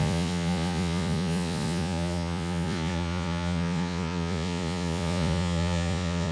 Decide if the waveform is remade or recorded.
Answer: remade